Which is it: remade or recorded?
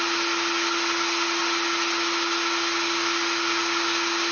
recorded